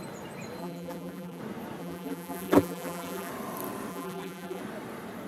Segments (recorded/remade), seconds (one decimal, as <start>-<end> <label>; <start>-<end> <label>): 0.0-0.6 recorded; 0.6-1.4 remade; 1.4-1.8 recorded; 1.8-3.3 remade; 3.3-3.9 recorded; 3.9-4.6 remade; 4.6-5.3 recorded